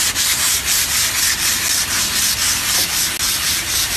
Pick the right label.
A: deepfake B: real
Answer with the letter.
B